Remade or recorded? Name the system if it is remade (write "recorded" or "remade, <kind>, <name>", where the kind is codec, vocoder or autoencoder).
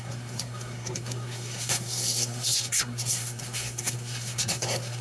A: remade, codec, SNAC